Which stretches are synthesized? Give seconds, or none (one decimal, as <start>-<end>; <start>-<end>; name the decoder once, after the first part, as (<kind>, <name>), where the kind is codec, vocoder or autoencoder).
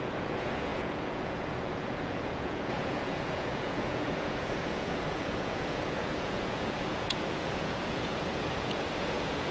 0.0-9.5 (vocoder, Vocos)